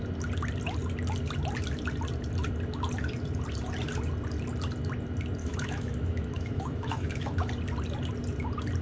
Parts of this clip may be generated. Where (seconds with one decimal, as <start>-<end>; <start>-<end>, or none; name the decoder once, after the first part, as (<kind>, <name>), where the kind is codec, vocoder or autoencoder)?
5.4-7.5 (autoencoder, DAC-VAE)